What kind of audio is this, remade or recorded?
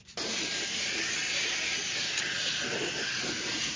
recorded